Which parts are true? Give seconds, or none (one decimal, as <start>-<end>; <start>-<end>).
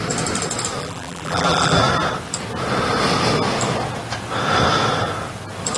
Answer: 0.0-0.8; 1.8-5.8